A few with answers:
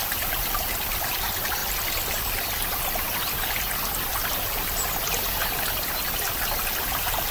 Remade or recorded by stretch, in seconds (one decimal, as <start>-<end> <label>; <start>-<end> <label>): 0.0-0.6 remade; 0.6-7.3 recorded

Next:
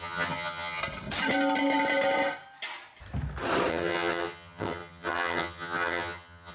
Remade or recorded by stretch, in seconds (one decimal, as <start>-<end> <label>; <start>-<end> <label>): 0.0-0.8 remade; 0.8-3.7 recorded; 3.7-6.5 remade

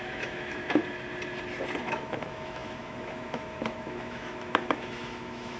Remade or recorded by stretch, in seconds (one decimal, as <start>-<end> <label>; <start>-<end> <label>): 0.0-0.8 remade; 0.8-1.8 recorded; 1.8-5.6 remade